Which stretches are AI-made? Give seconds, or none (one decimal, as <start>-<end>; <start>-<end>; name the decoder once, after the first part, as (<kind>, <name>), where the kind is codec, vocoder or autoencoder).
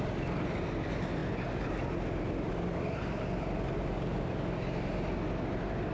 none